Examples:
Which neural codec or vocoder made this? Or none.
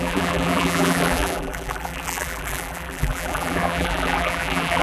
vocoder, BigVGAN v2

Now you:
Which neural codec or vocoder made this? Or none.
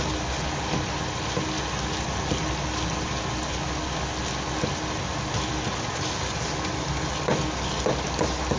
none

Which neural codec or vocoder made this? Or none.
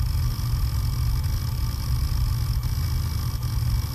none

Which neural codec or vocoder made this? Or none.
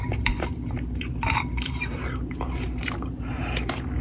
vocoder, BigVGAN v2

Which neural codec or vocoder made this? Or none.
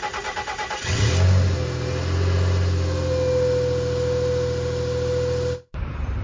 none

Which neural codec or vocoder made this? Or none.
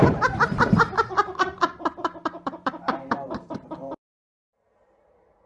vocoder, BigVGAN v2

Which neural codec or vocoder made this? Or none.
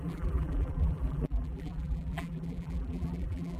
vocoder, BigVGAN v2